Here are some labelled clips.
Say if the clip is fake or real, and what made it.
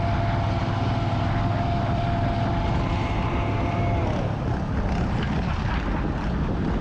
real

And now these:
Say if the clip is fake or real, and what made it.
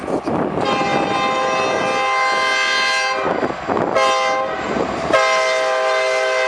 real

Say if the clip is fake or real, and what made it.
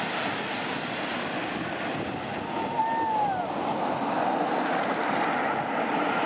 real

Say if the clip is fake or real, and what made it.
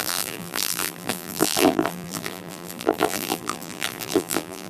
fake, vocoder, BigVGAN v2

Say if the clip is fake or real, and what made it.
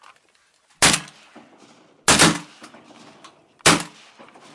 real